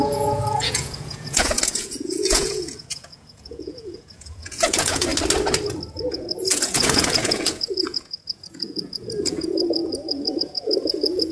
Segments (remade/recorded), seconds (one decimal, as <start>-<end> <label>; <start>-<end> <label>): 0.0-5.1 remade; 5.1-6.1 recorded; 6.1-11.3 remade